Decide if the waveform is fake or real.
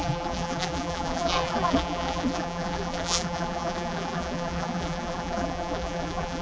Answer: fake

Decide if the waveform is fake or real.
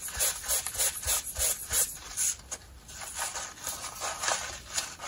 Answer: real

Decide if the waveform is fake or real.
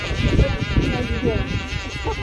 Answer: fake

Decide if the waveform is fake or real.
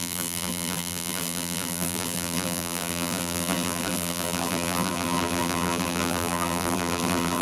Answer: fake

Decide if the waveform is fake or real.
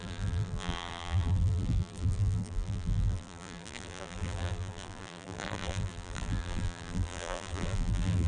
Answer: fake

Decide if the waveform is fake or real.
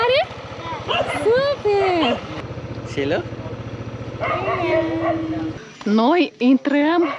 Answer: real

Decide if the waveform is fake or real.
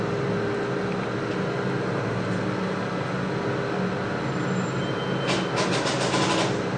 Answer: real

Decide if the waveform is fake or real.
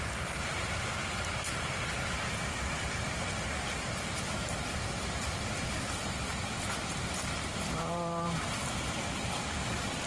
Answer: fake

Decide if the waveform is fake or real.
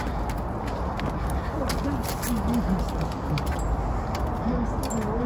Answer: real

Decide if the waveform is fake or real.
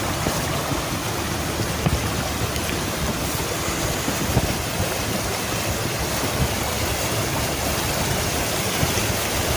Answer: real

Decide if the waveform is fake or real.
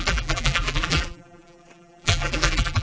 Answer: fake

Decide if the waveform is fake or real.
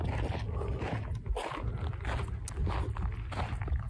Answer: real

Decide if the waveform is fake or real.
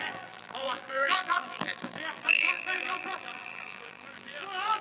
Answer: fake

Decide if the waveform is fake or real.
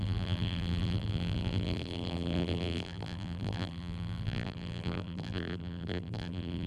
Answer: fake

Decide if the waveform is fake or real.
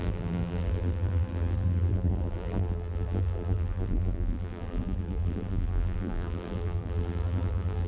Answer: fake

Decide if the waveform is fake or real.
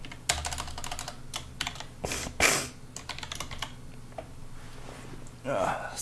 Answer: real